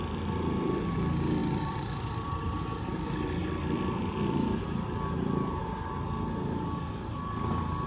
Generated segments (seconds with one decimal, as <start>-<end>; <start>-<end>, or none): 1.4-2.6; 3.4-4.9

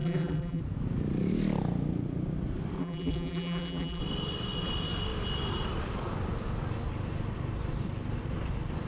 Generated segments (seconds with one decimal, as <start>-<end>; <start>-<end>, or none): 0.0-0.6; 2.8-4.0

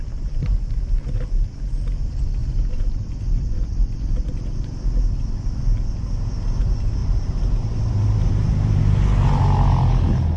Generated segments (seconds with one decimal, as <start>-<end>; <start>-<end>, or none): 7.0-8.8

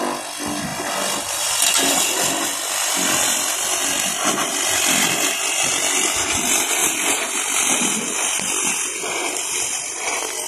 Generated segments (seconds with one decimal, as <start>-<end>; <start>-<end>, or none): 4.5-5.7; 6.8-7.6

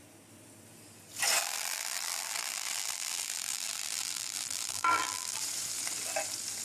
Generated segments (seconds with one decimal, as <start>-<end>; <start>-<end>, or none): 1.4-5.4

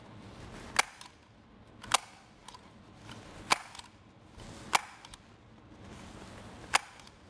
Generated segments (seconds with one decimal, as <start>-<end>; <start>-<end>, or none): none

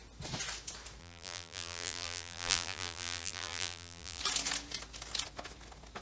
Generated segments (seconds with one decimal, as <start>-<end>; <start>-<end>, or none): 1.0-4.2